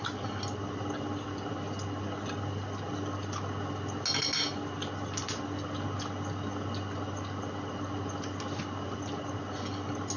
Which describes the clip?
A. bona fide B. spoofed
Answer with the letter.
A